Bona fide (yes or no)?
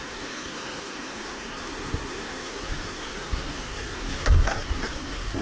no